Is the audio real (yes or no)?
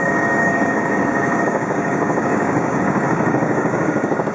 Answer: no